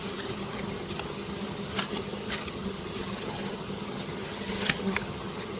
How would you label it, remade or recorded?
remade